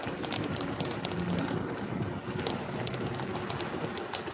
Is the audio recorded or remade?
recorded